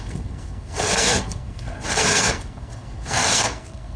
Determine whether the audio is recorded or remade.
remade